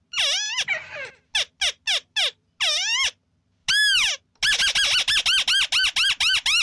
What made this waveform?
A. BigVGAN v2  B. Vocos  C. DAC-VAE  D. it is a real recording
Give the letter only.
D